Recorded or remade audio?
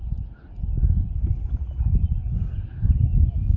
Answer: recorded